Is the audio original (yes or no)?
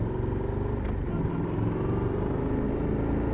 yes